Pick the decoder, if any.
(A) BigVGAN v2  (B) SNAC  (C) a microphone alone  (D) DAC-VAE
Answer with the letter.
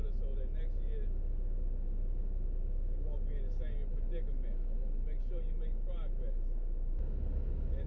C